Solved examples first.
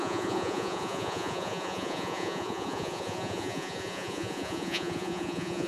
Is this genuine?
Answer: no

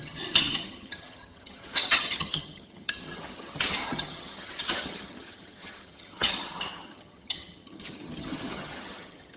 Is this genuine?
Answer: no